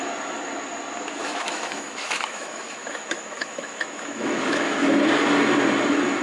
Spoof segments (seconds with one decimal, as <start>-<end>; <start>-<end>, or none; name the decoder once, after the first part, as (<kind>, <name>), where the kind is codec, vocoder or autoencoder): 1.2-4.9 (autoencoder, DAC-VAE)